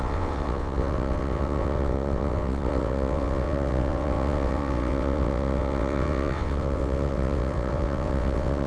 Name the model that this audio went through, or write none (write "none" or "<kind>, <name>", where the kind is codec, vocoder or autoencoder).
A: vocoder, WaveNeXt